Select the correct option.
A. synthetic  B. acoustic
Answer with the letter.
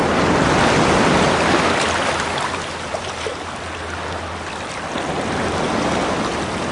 B